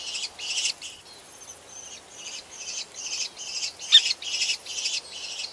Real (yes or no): yes